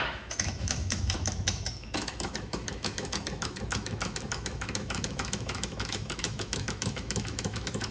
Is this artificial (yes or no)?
yes